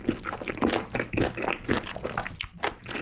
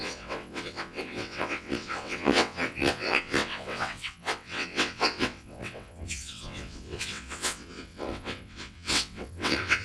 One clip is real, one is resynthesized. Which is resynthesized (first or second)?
second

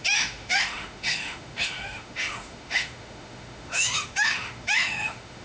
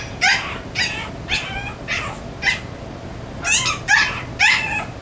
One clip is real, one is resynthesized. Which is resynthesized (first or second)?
first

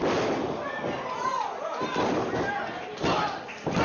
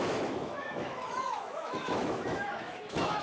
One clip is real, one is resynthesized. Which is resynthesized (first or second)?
second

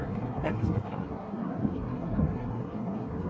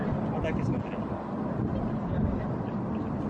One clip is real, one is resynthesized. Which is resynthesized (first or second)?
first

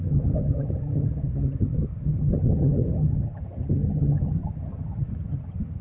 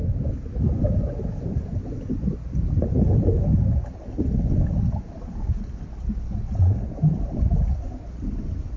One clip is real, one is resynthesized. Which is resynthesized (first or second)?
first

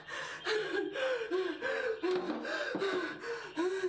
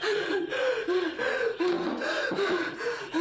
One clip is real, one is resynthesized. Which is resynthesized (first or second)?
second